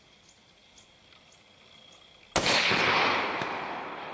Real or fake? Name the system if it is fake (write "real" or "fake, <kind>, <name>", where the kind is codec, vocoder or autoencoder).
real